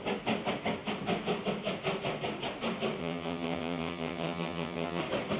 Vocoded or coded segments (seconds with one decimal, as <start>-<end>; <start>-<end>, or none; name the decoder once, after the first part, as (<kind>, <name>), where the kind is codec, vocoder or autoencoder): 3.0-5.0 (vocoder, HiFi-GAN)